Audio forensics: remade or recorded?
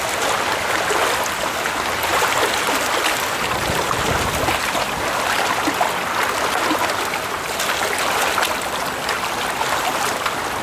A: recorded